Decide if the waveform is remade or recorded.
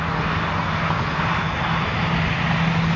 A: recorded